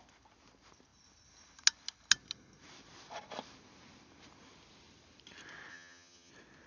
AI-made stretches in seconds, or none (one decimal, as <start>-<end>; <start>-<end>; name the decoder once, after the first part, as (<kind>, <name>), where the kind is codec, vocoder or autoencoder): 5.7-6.3 (vocoder, HiFi-GAN)